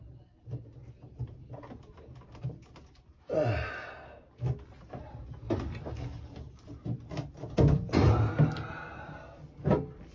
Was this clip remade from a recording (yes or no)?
no